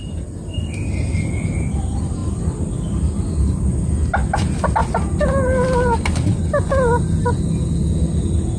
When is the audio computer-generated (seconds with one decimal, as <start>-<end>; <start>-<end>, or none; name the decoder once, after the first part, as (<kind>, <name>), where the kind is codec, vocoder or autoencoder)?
none